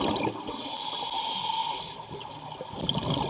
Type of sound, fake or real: real